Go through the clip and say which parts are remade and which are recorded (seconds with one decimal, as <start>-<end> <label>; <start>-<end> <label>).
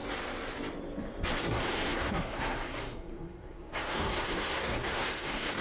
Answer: 0.0-1.4 recorded; 1.4-5.6 remade